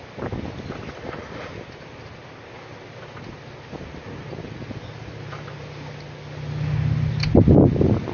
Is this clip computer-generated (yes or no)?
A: no